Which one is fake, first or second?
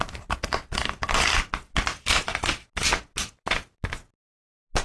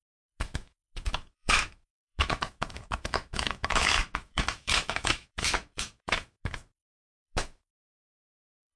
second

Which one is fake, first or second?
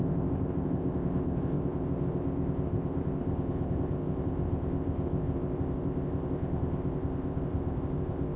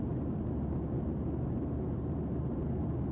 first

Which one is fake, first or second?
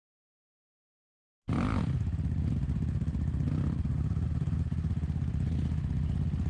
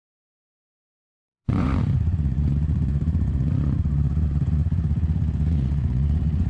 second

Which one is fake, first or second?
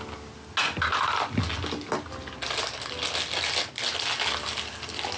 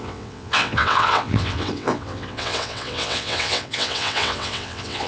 second